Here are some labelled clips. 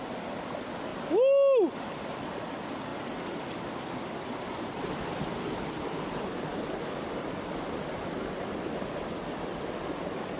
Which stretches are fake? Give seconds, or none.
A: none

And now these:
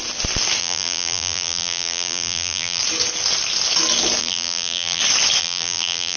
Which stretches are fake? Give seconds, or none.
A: 0.6-2.8 (vocoder, BigVGAN v2); 4.2-5.0; 5.4-6.2

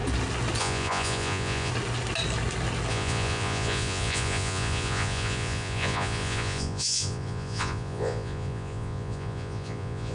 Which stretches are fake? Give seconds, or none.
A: 0.6-1.7 (vocoder, Vocos); 2.9-10.1

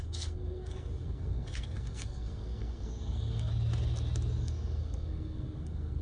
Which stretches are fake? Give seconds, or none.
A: 0.0-3.5 (codec, SNAC); 4.4-6.0

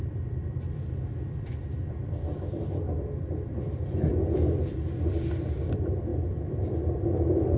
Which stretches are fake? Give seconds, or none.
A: 0.0-4.1 (vocoder, BigVGAN v2); 5.1-7.6

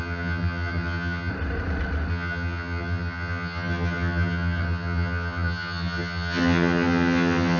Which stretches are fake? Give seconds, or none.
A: 0.0-1.3 (vocoder, HiFi-GAN); 2.1-7.6

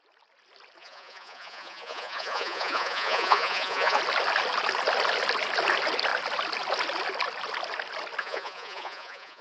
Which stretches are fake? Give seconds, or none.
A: 0.8-4.0 (vocoder, Vocos); 8.2-9.4

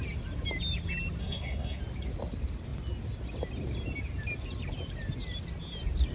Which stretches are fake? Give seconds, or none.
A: 1.2-1.8 (codec, SNAC)